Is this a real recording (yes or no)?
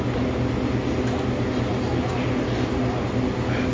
yes